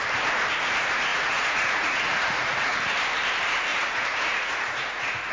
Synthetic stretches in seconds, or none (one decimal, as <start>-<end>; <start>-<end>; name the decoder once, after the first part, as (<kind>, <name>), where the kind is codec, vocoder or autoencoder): 1.1-2.8 (vocoder, Vocos); 3.7-5.3